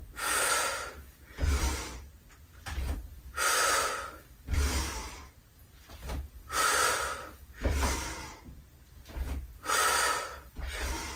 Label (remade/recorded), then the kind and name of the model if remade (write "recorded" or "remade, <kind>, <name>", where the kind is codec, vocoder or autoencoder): recorded